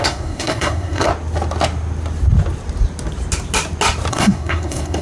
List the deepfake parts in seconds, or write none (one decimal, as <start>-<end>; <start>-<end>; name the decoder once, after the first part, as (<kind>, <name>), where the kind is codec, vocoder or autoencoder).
0.0-1.1 (codec, SNAC); 4.1-5.0